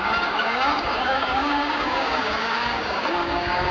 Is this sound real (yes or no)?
no